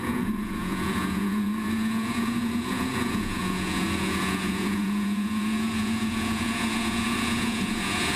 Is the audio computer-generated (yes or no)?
yes